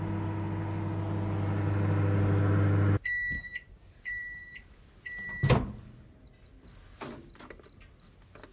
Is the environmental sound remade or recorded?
recorded